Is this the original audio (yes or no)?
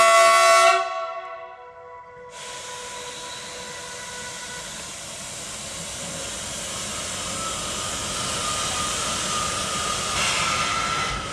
yes